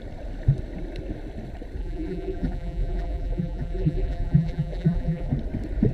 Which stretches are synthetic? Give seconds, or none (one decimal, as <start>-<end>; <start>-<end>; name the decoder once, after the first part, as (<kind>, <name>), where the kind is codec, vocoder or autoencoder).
1.8-5.3 (vocoder, BigVGAN v2)